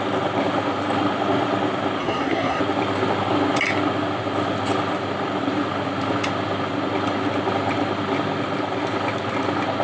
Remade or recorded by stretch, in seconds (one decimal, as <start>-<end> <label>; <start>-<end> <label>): 0.0-2.0 recorded; 2.0-2.6 remade; 2.6-9.8 recorded

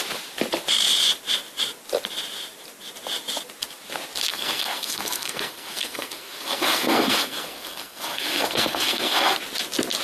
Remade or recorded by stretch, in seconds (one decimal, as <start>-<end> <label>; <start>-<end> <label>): 0.0-4.3 recorded; 4.3-9.4 remade; 9.4-10.0 recorded

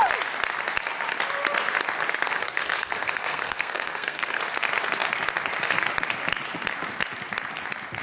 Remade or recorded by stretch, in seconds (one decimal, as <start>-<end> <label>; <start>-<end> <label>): 0.0-2.4 recorded; 2.4-4.4 remade; 4.4-8.0 recorded

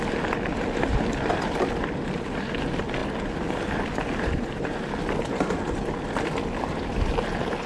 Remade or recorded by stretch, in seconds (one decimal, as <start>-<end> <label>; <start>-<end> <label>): 0.0-7.7 recorded